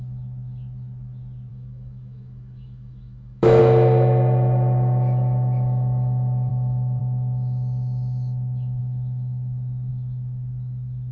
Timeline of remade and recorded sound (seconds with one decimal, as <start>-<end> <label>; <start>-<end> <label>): 0.0-1.5 recorded; 1.5-3.6 remade; 3.6-6.5 recorded; 6.5-7.0 remade; 7.0-11.1 recorded